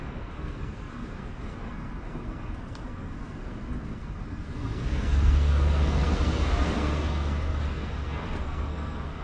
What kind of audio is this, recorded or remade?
remade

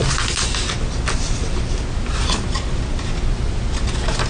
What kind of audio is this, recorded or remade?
recorded